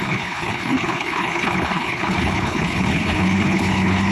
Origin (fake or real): fake